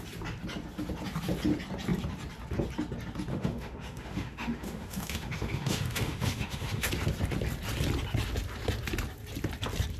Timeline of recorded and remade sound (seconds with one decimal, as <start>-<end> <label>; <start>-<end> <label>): 0.0-3.3 recorded; 3.3-6.9 remade; 6.9-10.0 recorded